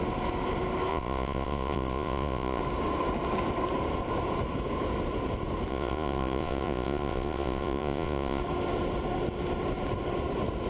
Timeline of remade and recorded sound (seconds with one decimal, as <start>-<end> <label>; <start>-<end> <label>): 0.0-0.9 recorded; 0.9-2.6 remade; 2.6-5.7 recorded; 5.7-8.4 remade; 8.4-10.7 recorded